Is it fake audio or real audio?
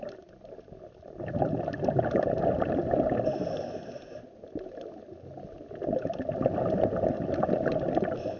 real